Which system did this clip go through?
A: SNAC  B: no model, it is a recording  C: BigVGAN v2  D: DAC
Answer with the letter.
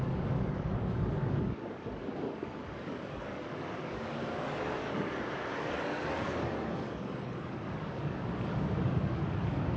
D